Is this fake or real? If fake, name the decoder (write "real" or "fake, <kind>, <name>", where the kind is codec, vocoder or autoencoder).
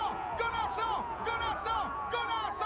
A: fake, vocoder, Vocos